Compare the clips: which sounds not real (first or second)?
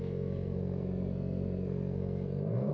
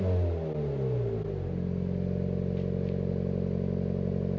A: first